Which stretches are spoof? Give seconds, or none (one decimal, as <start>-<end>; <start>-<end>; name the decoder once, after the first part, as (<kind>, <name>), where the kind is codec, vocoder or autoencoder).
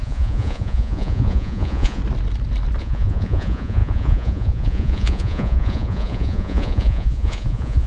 0.0-2.0 (vocoder, Vocos); 2.8-7.9